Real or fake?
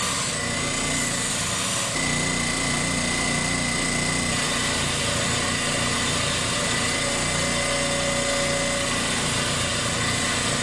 real